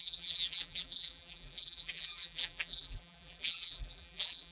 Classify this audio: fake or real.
fake